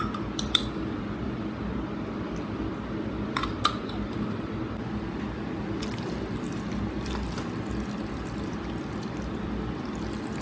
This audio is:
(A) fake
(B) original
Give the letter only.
A